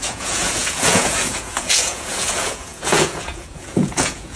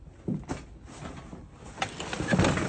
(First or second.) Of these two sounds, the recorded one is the second